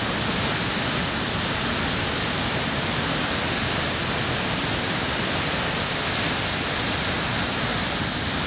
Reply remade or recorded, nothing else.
recorded